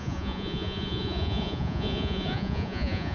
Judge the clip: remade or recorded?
remade